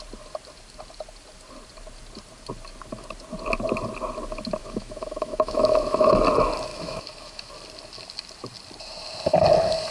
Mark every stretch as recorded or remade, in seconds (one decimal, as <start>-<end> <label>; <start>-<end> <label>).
0.0-4.6 recorded; 4.6-6.1 remade; 6.1-6.7 recorded; 6.7-7.5 remade; 7.5-9.9 recorded